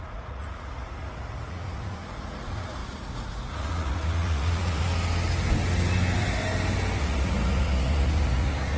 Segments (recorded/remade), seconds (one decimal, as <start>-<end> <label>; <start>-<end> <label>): 0.0-4.9 remade; 4.9-7.0 recorded; 7.0-8.8 remade

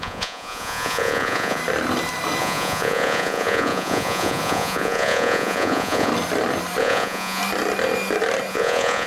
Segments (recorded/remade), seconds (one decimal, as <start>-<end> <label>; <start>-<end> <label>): 0.0-1.6 remade; 1.6-2.4 recorded; 2.4-6.1 remade; 6.1-6.8 recorded; 6.8-7.4 remade; 7.4-8.5 recorded; 8.5-9.1 remade

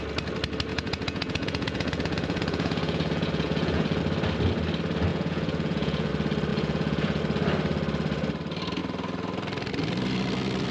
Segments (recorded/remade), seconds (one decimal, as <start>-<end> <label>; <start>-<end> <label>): 0.0-0.7 recorded; 0.7-4.0 remade; 4.0-5.1 recorded; 5.1-6.1 remade; 6.1-6.5 recorded; 6.5-7.2 remade; 7.2-10.7 recorded

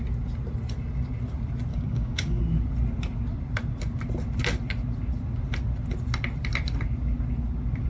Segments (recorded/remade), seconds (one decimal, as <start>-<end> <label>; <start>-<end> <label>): 0.0-1.7 recorded; 1.7-2.4 remade; 2.4-7.9 recorded

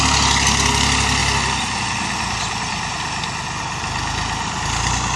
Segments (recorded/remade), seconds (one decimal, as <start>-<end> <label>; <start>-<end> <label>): 0.0-5.2 recorded

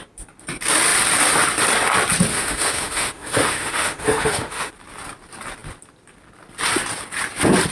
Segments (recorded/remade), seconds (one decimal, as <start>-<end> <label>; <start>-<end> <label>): 0.0-2.3 recorded; 2.3-4.7 remade; 4.7-7.7 recorded

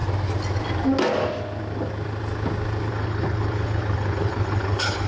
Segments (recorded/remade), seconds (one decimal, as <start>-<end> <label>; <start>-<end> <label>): 0.0-2.9 recorded; 2.9-5.1 remade

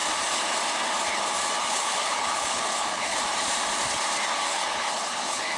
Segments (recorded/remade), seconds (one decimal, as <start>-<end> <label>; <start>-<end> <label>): 0.0-1.6 recorded; 1.6-3.2 remade; 3.2-4.5 recorded; 4.5-5.6 remade